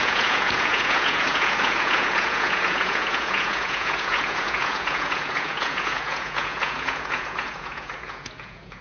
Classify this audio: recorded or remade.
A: remade